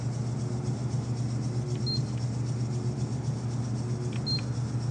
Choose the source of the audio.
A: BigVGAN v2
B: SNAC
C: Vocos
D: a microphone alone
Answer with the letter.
D